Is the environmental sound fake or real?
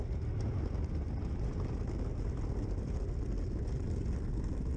real